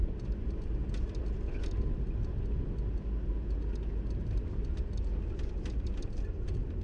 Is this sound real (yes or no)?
yes